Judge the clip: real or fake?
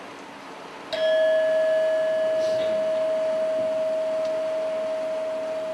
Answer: real